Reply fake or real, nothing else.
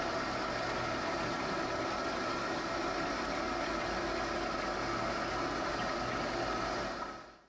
real